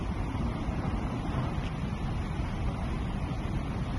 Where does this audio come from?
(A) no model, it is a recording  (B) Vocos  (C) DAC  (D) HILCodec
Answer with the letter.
A